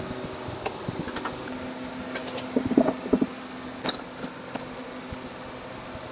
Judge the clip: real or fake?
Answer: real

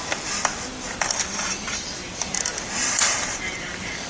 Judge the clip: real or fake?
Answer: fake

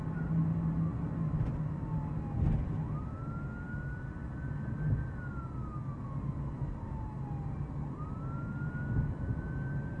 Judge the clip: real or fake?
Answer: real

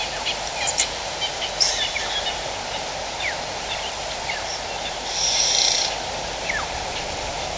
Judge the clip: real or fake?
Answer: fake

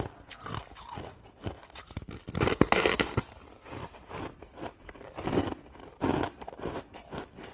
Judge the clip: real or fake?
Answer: fake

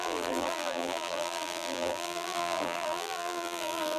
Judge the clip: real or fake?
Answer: fake